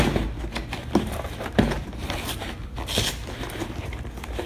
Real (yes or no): yes